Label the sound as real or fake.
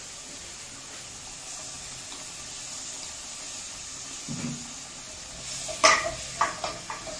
real